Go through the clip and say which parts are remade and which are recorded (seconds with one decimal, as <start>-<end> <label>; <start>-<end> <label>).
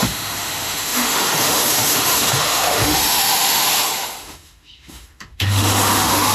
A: 0.0-6.3 remade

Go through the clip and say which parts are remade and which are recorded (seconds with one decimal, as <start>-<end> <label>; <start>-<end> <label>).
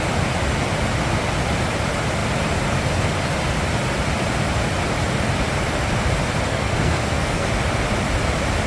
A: 0.0-6.5 recorded; 6.5-7.5 remade; 7.5-8.7 recorded